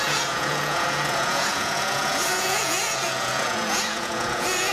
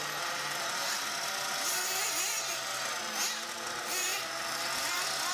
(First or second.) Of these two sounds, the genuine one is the second